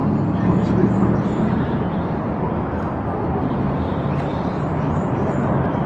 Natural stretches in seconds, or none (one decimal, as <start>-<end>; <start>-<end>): 0.0-5.9